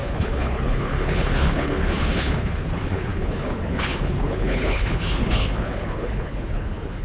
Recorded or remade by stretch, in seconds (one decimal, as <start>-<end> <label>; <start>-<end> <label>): 0.0-7.0 remade